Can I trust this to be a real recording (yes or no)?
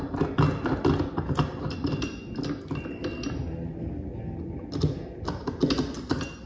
yes